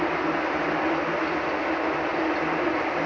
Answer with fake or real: real